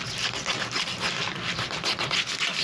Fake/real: real